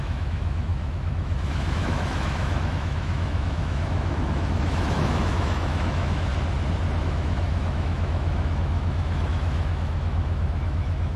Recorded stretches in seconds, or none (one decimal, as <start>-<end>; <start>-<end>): 6.3-7.0